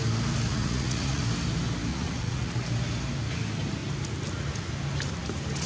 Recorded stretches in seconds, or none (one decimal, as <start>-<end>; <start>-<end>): 0.0-0.5; 1.2-1.9; 2.6-5.7